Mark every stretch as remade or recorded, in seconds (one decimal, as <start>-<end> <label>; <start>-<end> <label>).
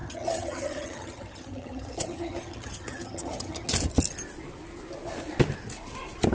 0.0-3.7 remade; 3.7-6.3 recorded